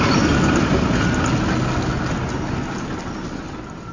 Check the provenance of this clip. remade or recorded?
recorded